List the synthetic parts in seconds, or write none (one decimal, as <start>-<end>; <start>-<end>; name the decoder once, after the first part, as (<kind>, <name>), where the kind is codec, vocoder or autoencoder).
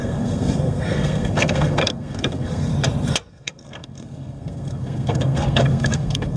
0.0-2.7 (codec, SNAC); 3.3-6.4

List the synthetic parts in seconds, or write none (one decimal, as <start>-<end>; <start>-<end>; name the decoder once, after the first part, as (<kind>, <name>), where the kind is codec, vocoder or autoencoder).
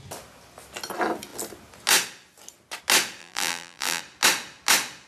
3.2-4.0 (vocoder, BigVGAN v2)